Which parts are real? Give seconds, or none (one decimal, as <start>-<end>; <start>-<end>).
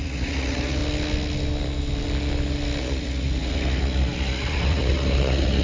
0.8-2.8